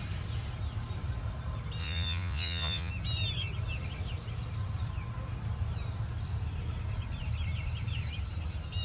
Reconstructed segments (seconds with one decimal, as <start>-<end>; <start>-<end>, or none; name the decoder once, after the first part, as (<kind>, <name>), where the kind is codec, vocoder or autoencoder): 1.8-2.9 (vocoder, Vocos)